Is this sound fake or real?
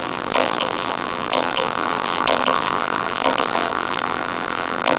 fake